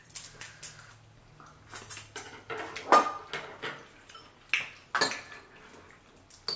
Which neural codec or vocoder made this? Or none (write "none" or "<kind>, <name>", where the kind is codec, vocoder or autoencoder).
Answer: none